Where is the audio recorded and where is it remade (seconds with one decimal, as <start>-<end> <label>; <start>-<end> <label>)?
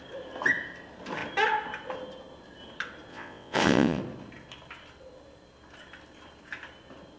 0.0-3.1 recorded; 3.1-4.0 remade; 4.0-7.2 recorded